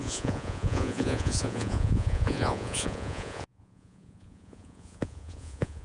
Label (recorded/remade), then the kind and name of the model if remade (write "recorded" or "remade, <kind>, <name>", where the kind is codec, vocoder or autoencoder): remade, vocoder, Vocos